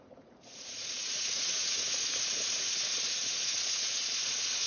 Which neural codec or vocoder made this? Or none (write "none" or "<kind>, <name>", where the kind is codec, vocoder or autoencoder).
vocoder, Vocos